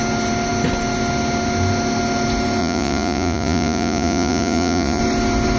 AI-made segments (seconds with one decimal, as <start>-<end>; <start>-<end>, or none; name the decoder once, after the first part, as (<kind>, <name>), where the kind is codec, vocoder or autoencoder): 2.6-5.0 (vocoder, Vocos)